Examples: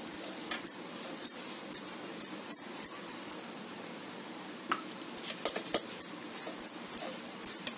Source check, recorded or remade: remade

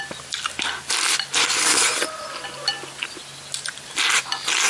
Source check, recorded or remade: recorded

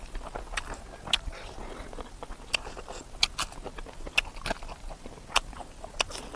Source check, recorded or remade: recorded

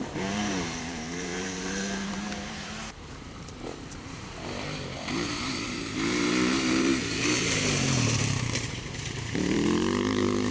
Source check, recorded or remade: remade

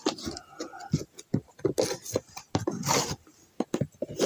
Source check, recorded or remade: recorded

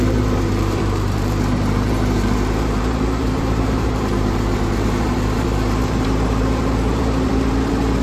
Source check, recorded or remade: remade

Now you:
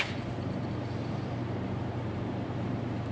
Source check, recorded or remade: remade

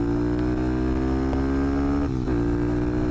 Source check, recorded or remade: recorded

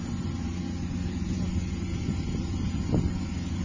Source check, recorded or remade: recorded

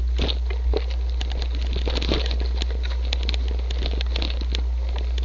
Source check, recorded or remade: recorded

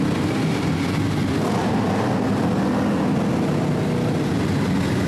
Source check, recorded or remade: recorded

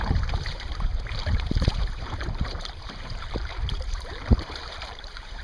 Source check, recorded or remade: remade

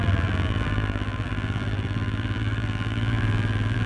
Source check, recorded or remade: remade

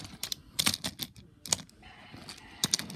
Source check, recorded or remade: recorded